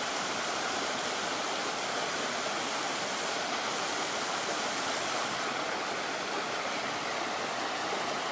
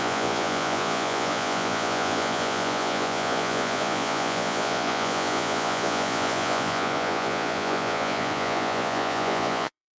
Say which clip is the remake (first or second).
second